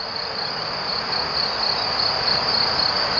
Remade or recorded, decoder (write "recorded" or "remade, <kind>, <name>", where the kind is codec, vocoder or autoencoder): recorded